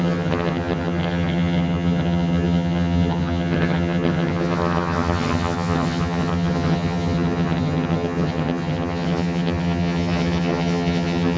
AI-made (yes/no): yes